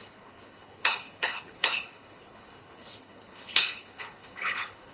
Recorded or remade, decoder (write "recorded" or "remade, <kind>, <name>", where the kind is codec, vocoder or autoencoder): remade, codec, HILCodec